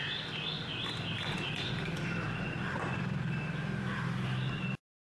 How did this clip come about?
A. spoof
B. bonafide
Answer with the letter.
B